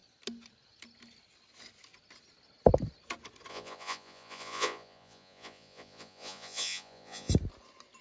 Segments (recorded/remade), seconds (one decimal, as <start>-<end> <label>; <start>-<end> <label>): 0.0-3.5 recorded; 3.5-7.3 remade; 7.3-8.0 recorded